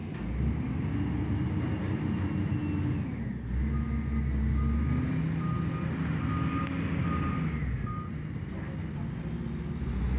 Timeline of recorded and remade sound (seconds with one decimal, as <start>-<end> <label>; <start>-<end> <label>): 0.0-10.2 recorded